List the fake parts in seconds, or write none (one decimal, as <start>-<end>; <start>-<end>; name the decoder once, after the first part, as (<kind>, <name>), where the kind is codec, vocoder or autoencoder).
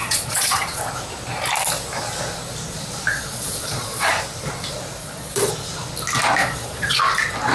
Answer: 0.0-0.8 (vocoder, Vocos); 3.1-4.1; 5.0-5.5; 6.4-7.0